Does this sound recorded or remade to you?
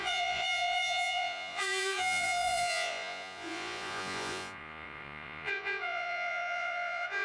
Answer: remade